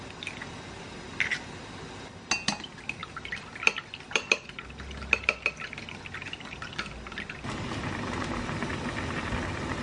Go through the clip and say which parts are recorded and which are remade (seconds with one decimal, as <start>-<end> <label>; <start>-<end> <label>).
0.0-9.8 recorded